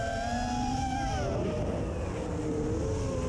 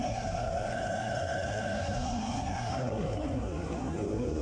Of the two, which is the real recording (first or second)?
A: first